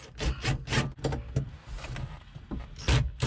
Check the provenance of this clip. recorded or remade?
recorded